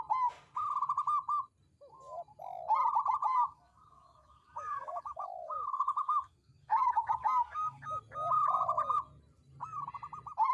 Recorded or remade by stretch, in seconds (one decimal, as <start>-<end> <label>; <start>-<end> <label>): 0.0-3.3 recorded; 3.3-8.0 remade; 8.0-10.5 recorded